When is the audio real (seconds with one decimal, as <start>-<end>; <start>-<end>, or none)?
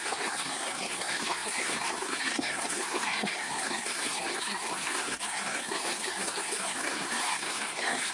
none